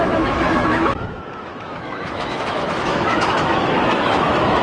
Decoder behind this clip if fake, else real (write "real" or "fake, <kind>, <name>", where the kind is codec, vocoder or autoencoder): fake, autoencoder, DAC-VAE